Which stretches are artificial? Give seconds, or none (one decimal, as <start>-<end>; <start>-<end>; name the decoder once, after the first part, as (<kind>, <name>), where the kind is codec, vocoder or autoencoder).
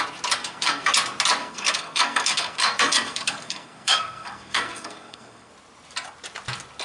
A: 0.4-0.9 (codec, SNAC); 1.4-5.5